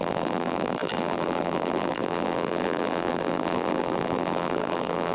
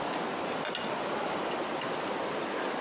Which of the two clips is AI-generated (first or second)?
first